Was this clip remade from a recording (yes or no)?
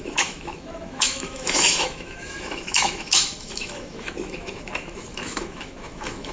yes